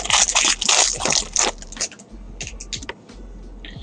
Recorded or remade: recorded